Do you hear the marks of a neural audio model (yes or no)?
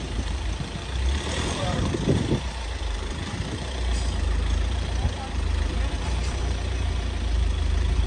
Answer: yes